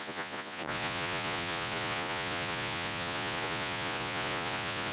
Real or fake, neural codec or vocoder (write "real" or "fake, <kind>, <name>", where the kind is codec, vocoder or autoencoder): fake, vocoder, Vocos